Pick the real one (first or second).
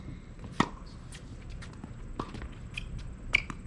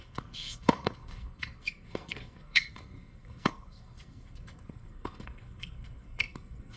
first